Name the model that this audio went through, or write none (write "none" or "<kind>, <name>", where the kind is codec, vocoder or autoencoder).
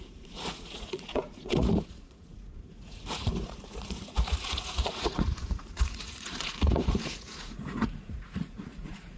vocoder, Vocos